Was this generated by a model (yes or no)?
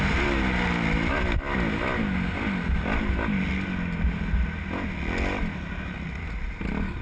no